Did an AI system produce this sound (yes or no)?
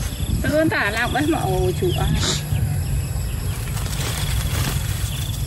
no